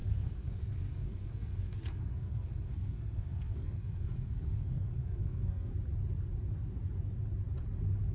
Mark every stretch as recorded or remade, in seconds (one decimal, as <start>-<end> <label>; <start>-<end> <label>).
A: 0.0-5.7 remade; 5.7-8.1 recorded

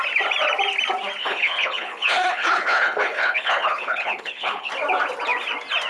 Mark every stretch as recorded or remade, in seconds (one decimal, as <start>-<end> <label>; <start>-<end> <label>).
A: 0.0-1.2 recorded; 1.2-4.7 remade; 4.7-5.9 recorded

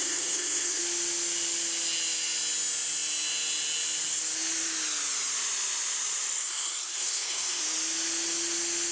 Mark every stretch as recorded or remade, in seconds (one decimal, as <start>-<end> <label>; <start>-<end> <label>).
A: 0.0-0.8 remade; 0.8-6.4 recorded; 6.4-7.6 remade; 7.6-8.9 recorded

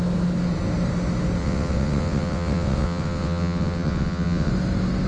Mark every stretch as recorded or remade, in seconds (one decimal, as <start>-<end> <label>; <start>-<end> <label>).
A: 0.0-1.4 recorded; 1.4-4.5 remade; 4.5-5.1 recorded

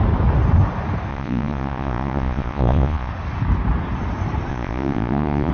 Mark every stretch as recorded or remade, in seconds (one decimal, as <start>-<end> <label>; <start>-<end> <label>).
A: 0.0-1.1 recorded; 1.1-3.1 remade; 3.1-4.5 recorded; 4.5-5.5 remade

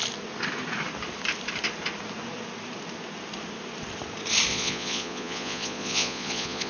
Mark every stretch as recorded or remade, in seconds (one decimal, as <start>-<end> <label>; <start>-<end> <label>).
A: 0.0-4.5 recorded; 4.5-6.7 remade

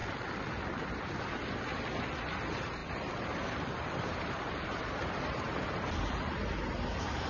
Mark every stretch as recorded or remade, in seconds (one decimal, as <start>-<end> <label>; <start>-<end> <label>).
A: 0.0-0.5 remade; 0.5-2.8 recorded; 2.8-6.7 remade; 6.7-7.3 recorded

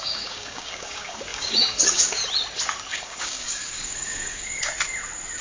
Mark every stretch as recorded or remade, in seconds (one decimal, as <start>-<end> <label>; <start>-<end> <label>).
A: 0.0-2.2 remade; 2.2-2.9 recorded; 2.9-4.7 remade; 4.7-5.4 recorded